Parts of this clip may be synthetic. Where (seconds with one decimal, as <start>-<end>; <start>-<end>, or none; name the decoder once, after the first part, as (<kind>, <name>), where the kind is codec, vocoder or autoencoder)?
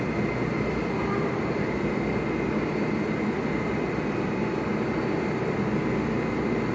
none